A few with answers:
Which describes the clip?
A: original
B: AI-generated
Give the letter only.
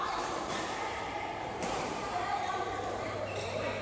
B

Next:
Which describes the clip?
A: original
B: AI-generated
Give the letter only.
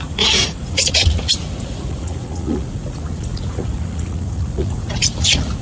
B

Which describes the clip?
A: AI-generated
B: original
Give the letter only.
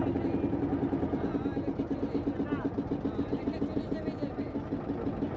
B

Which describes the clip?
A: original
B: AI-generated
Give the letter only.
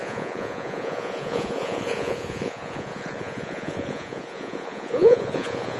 B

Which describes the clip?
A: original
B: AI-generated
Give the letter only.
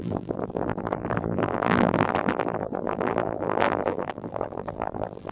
B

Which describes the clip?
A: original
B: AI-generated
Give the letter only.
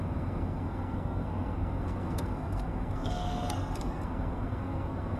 B